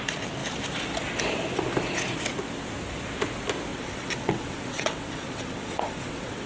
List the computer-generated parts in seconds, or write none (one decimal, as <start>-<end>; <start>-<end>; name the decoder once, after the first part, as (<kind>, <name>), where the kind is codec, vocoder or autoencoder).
3.7-6.5 (vocoder, WaveNeXt)